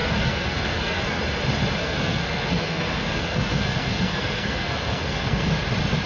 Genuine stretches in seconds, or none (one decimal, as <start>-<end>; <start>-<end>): 1.2-1.8; 5.5-6.1